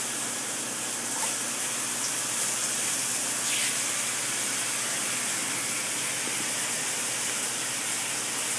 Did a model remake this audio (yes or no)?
no